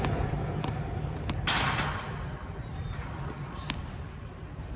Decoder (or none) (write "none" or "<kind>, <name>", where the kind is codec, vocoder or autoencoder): none